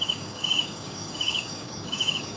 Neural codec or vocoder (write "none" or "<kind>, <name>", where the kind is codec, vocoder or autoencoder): codec, DAC